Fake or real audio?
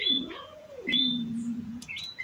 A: fake